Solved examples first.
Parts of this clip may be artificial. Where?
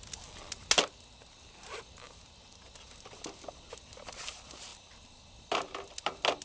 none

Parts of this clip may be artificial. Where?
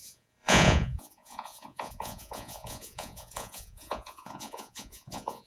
0.0-5.5 (vocoder, Vocos)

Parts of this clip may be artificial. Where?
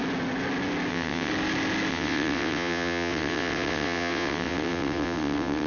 0.9-1.3 (vocoder, WaveNeXt); 1.9-5.7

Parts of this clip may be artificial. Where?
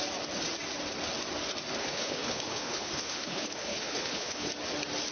1.8-4.5 (codec, HILCodec)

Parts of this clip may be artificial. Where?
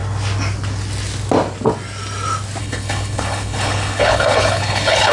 2.6-5.1 (codec, HILCodec)